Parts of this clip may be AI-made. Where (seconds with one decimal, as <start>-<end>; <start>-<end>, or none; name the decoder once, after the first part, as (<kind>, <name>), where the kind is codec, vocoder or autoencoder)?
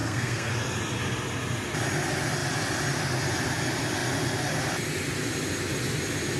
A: 0.0-0.5 (codec, SNAC)